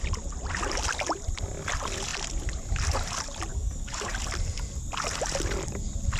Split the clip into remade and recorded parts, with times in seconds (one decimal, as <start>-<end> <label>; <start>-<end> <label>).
0.0-3.5 recorded; 3.5-4.1 remade; 4.1-6.2 recorded